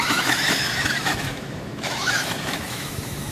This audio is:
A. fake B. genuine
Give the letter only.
A